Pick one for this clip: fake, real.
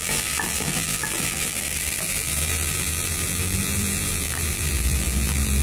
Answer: fake